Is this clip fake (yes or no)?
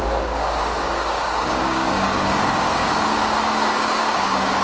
yes